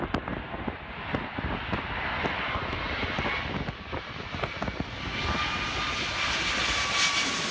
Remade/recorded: recorded